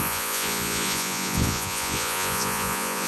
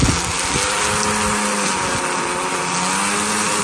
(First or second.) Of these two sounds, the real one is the second